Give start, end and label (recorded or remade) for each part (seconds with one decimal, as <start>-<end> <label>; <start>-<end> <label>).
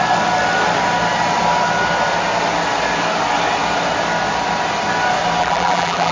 0.0-5.4 recorded; 5.4-6.1 remade